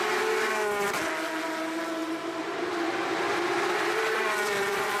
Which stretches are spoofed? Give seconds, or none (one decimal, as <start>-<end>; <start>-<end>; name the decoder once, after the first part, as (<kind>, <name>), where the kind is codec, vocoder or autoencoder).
2.0-5.0 (vocoder, BigVGAN v2)